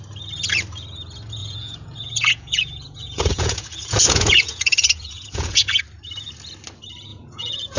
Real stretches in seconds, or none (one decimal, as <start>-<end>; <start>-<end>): 0.0-1.4; 5.8-7.1